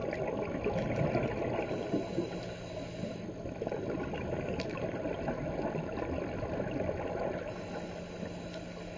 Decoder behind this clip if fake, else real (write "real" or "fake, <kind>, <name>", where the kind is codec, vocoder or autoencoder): real